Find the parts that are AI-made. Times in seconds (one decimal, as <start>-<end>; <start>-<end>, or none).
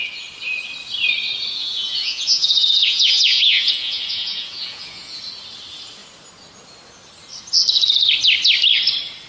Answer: 1.5-5.2